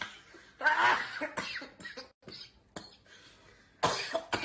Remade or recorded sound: recorded